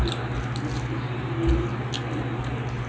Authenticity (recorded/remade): recorded